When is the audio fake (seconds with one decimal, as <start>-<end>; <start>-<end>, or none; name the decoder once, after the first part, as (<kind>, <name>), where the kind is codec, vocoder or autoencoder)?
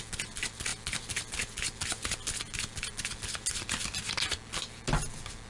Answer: none